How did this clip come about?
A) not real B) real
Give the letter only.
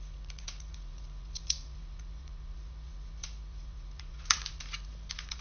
A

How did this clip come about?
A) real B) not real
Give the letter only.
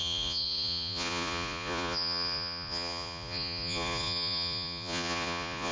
B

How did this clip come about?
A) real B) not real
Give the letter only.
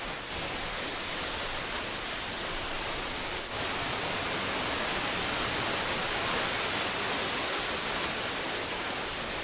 A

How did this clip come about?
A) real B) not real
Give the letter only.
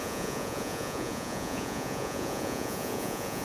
B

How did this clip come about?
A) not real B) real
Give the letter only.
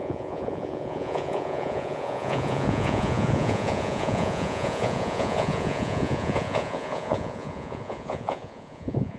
A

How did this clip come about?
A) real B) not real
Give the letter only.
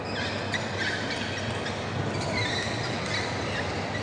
A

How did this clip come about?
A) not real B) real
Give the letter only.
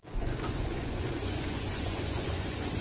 A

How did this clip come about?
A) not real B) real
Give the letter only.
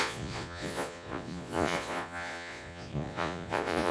A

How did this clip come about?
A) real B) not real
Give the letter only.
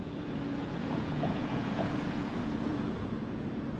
B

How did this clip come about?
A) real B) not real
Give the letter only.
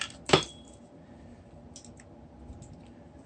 A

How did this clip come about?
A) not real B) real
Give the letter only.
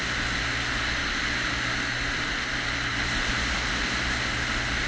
B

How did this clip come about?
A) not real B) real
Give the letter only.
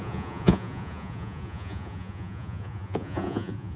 A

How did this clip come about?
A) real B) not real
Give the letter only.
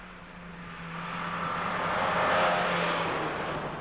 A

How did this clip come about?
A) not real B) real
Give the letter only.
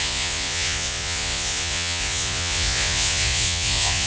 A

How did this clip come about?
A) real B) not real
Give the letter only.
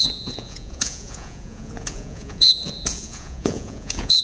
B